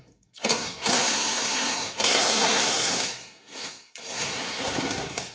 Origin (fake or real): fake